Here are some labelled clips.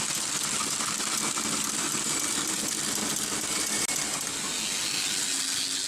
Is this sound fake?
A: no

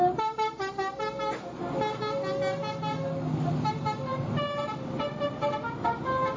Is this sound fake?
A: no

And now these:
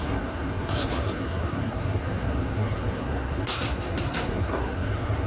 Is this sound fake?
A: yes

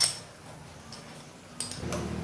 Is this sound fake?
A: no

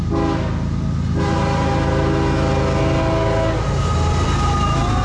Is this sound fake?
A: no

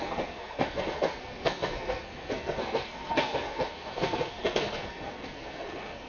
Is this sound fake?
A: yes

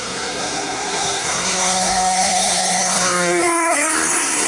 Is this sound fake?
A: yes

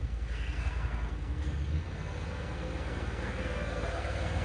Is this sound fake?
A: yes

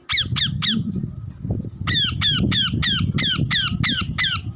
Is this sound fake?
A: no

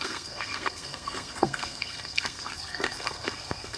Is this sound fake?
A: yes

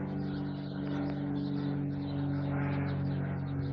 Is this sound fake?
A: no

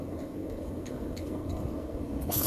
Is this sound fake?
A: yes